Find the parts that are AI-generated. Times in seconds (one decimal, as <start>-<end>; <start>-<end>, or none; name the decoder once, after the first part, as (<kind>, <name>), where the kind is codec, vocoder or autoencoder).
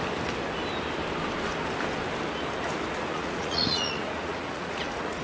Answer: 3.1-5.2 (vocoder, Vocos)